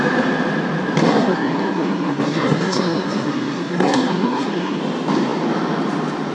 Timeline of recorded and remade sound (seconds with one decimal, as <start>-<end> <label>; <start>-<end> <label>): 0.0-1.0 recorded; 1.0-4.8 remade; 4.8-6.3 recorded